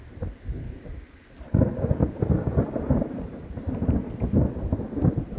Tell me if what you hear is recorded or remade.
recorded